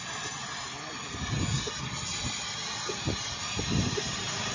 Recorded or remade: recorded